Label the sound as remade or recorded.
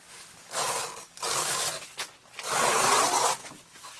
recorded